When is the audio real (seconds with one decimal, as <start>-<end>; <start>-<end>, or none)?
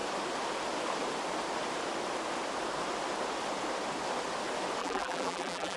0.0-4.8